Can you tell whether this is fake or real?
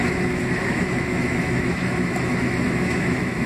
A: fake